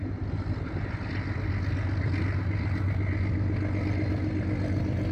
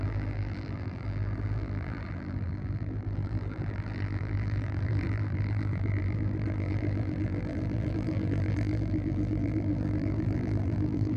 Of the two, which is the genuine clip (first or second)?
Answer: first